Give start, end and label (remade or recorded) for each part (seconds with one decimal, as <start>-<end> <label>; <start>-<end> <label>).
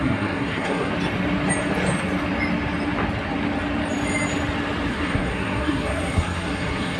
0.0-0.9 remade; 0.9-4.9 recorded; 4.9-7.0 remade